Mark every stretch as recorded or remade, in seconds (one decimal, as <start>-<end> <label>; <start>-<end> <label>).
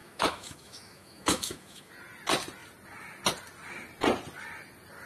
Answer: 0.0-1.9 remade; 1.9-5.1 recorded